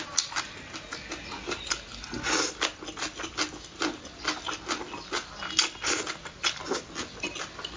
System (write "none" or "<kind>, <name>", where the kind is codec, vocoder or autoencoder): none